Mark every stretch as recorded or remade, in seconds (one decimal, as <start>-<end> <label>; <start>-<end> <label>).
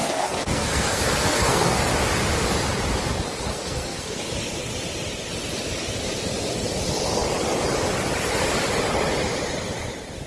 0.0-1.9 remade; 1.9-3.5 recorded; 3.5-4.2 remade; 4.2-10.3 recorded